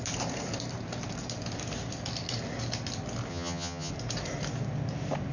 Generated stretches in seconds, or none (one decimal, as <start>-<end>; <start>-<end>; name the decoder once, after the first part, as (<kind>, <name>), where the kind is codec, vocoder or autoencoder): 3.3-3.9 (vocoder, HiFi-GAN)